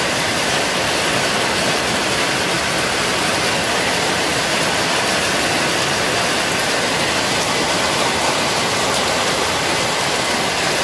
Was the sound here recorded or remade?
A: recorded